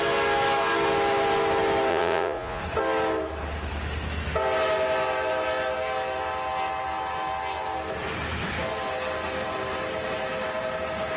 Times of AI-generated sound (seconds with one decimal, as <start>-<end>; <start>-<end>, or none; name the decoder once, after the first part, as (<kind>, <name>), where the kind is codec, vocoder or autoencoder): 1.9-2.6 (vocoder, Vocos)